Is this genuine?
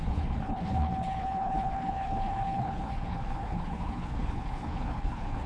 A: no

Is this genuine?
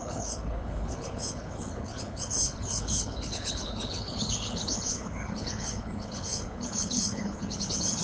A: no